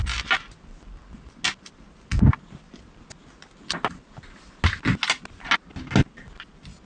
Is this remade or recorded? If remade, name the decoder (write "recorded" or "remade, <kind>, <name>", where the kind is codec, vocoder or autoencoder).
recorded